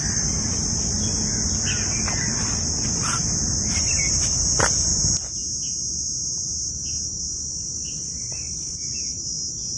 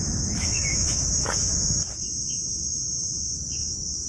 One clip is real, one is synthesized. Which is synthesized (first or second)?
second